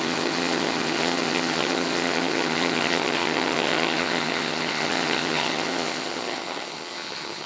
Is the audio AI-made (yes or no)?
yes